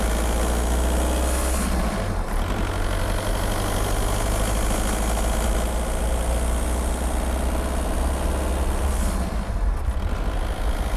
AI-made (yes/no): no